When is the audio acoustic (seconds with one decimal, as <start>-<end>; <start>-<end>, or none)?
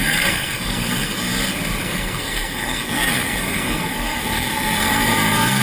1.2-1.8